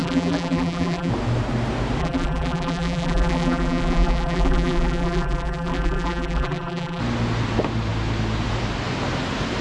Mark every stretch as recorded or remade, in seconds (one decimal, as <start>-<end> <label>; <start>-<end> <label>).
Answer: 0.0-1.1 remade; 1.1-2.0 recorded; 2.0-7.0 remade; 7.0-9.6 recorded